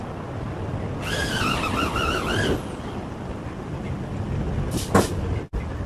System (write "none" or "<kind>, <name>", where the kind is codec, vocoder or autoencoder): none